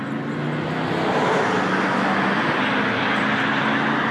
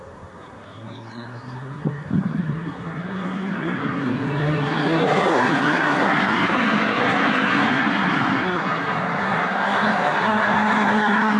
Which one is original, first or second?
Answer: first